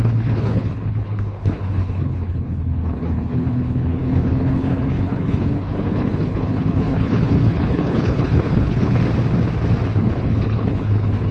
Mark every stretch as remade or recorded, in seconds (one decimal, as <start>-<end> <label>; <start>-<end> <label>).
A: 0.0-9.0 remade; 9.0-10.0 recorded; 10.0-11.3 remade